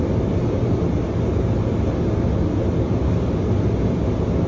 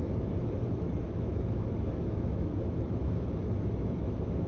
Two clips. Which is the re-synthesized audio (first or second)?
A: second